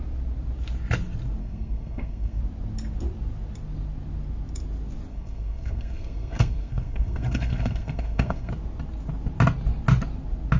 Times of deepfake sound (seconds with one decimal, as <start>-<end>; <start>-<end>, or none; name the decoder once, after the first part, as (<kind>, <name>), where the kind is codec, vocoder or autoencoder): 1.4-2.4 (codec, SNAC); 5.1-8.5